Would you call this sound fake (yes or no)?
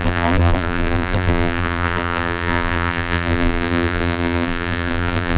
yes